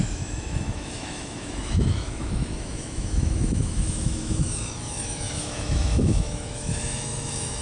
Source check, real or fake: fake